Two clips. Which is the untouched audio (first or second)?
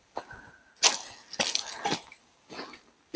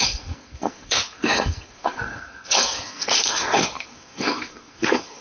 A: first